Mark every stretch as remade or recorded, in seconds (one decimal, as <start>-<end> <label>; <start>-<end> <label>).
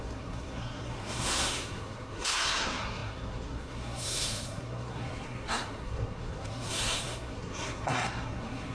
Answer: 0.0-8.7 remade